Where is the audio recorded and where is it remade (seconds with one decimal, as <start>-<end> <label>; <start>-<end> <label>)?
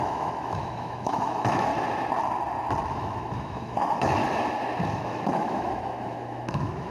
0.0-1.7 remade; 1.7-2.9 recorded; 2.9-4.2 remade; 4.2-4.9 recorded; 4.9-6.9 remade